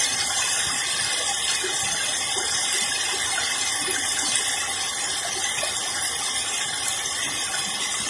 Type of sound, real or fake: real